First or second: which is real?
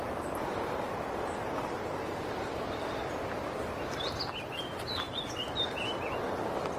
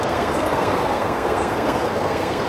first